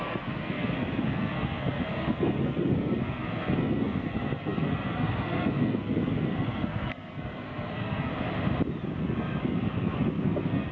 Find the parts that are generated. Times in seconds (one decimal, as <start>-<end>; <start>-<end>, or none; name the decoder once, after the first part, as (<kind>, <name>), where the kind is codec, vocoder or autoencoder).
0.0-8.1 (codec, SNAC); 9.0-10.7